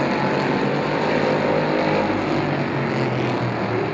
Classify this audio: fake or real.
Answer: real